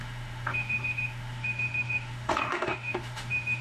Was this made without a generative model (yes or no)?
no